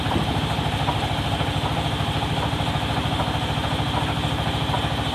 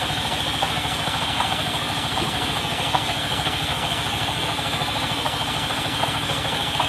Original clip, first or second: first